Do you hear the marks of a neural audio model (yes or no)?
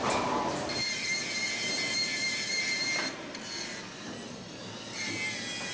yes